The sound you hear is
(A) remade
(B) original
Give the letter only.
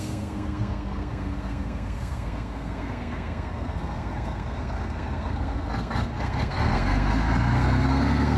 A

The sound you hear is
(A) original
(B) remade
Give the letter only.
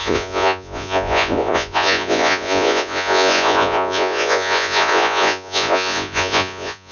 B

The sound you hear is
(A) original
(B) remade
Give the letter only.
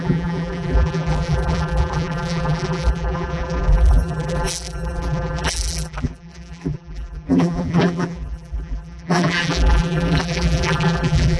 B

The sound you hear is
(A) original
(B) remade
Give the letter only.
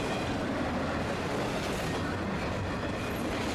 A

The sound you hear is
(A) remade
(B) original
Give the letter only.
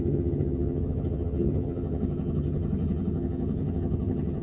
A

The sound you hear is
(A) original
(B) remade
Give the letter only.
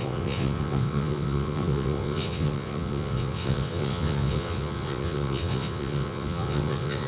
B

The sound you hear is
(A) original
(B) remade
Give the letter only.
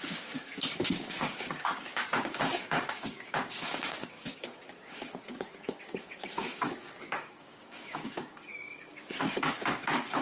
B